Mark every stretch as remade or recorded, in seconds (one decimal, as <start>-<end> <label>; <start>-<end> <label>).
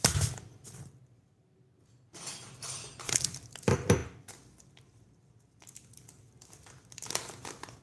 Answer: 0.0-7.8 recorded